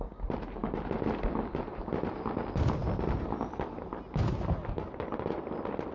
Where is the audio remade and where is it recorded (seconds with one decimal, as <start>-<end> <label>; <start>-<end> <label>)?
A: 0.0-5.9 recorded